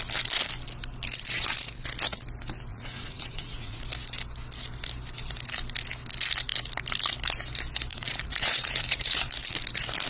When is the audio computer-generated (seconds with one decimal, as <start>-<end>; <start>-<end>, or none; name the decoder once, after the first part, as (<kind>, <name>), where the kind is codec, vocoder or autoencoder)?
2.7-3.8 (vocoder, Vocos); 7.9-9.3